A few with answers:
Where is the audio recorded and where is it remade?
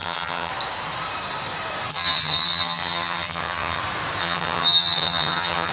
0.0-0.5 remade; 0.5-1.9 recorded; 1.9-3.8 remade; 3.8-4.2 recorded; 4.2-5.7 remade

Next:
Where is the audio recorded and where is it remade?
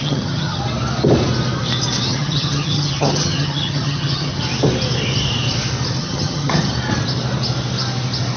0.0-0.6 remade; 0.6-2.1 recorded; 2.1-4.4 remade; 4.4-6.0 recorded; 6.0-6.7 remade; 6.7-8.4 recorded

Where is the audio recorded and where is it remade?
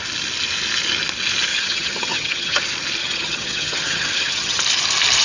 0.0-1.5 recorded; 1.5-2.6 remade; 2.6-3.0 recorded; 3.0-4.6 remade; 4.6-5.2 recorded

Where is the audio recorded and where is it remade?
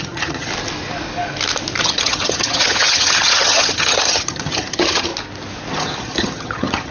0.0-0.5 remade; 0.5-1.8 recorded; 1.8-5.1 remade; 5.1-5.7 recorded; 5.7-6.9 remade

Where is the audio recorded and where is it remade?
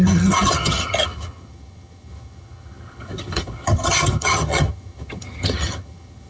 0.0-6.3 remade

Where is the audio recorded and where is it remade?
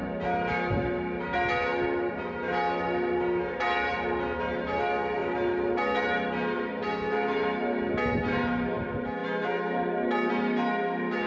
0.0-11.3 recorded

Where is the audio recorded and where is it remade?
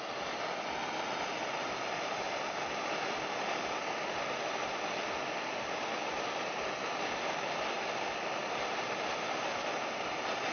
0.0-10.5 recorded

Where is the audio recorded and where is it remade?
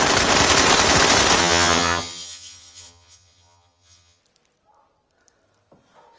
0.0-1.4 recorded; 1.4-4.2 remade; 4.2-6.2 recorded